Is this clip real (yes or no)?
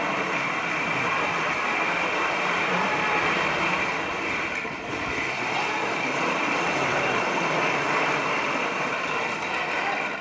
no